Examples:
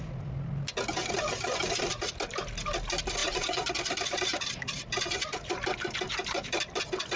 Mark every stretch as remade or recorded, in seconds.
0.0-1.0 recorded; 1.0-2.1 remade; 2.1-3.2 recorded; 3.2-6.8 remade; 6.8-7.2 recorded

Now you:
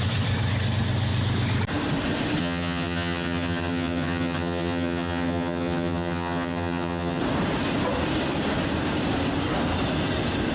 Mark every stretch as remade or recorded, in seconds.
0.0-2.4 recorded; 2.4-7.2 remade; 7.2-10.5 recorded

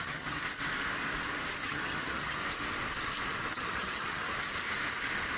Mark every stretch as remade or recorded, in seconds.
0.0-0.4 remade; 0.4-1.6 recorded; 1.6-2.4 remade; 2.4-3.5 recorded; 3.5-4.3 remade; 4.3-5.4 recorded

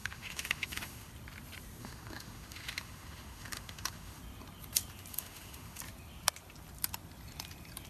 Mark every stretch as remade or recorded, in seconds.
0.0-1.1 remade; 1.1-1.8 recorded; 1.8-4.2 remade; 4.2-5.1 recorded; 5.1-5.8 remade; 5.8-7.9 recorded

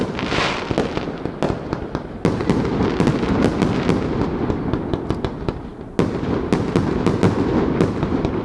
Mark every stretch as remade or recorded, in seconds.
0.0-8.4 recorded

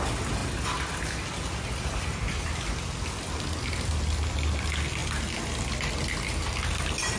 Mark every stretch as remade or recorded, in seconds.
0.0-7.2 recorded

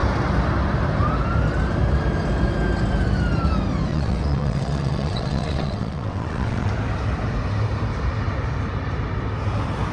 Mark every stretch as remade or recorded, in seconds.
0.0-3.9 recorded; 3.9-6.7 remade; 6.7-9.9 recorded